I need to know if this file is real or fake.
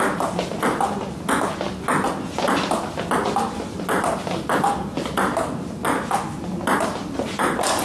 real